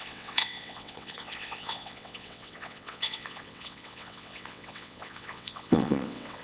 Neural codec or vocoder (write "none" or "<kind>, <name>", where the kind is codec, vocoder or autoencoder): vocoder, WaveNeXt